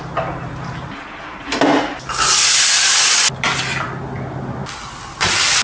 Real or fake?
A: real